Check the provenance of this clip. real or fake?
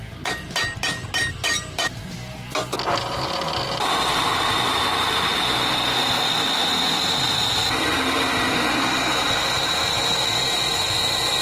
real